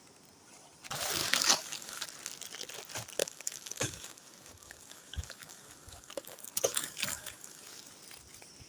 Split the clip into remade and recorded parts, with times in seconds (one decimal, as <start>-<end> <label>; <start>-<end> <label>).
0.0-1.2 recorded; 1.2-2.0 remade; 2.0-3.2 recorded; 3.2-7.9 remade; 7.9-8.7 recorded